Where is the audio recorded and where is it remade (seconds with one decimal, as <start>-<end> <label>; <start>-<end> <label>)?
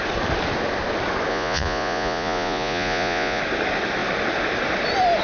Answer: 0.0-1.3 recorded; 1.3-3.4 remade; 3.4-5.2 recorded